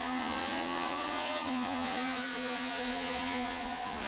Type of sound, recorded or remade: remade